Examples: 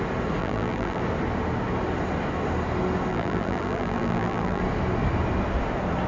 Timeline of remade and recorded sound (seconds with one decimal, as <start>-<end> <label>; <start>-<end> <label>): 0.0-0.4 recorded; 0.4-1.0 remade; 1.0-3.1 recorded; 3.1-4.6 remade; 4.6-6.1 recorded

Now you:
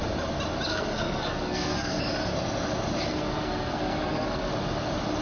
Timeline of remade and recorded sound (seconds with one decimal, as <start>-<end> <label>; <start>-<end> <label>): 0.0-0.7 recorded; 0.7-2.0 remade; 2.0-3.1 recorded; 3.1-4.5 remade; 4.5-5.2 recorded

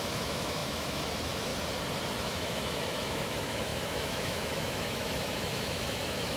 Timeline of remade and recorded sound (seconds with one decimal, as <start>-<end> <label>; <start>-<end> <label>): 0.0-1.5 remade; 1.5-2.2 recorded; 2.2-6.4 remade